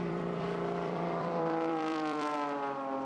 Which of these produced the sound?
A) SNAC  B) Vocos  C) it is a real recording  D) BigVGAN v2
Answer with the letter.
D